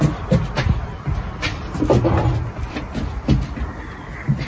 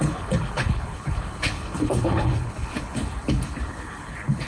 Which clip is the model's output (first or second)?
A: second